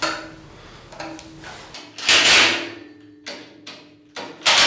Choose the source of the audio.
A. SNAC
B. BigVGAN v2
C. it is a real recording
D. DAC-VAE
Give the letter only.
C